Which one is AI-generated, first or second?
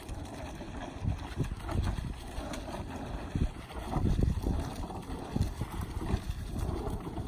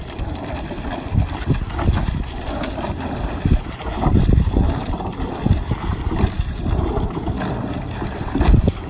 second